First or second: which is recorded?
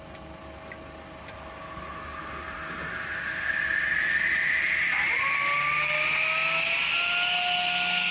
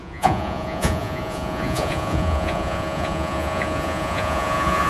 first